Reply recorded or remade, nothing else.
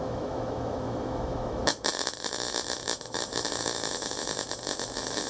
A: remade